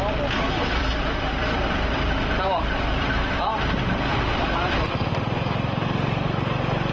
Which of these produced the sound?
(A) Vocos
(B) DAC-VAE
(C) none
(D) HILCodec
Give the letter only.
C